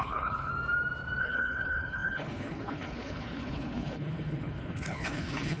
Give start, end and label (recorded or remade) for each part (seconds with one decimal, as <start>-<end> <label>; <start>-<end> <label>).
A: 0.0-0.5 remade; 0.5-1.2 recorded; 1.2-5.6 remade